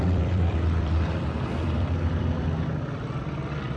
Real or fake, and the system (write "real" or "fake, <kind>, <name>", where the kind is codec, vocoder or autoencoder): fake, vocoder, BigVGAN v2